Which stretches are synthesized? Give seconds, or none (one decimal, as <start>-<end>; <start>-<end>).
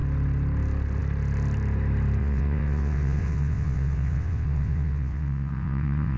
2.2-6.2